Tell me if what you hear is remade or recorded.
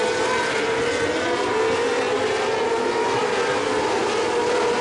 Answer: recorded